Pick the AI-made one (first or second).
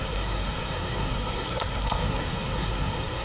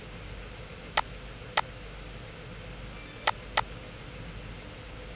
first